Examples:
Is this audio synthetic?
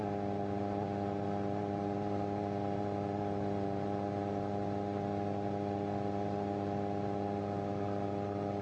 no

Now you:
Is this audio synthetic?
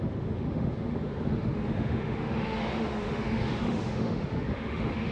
yes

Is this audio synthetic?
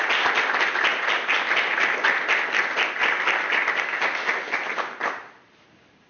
no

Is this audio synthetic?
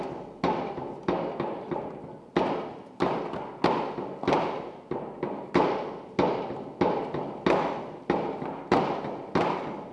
no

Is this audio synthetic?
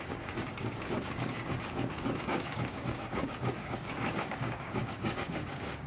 yes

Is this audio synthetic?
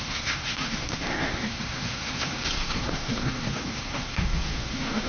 yes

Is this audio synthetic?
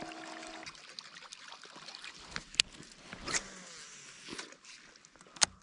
no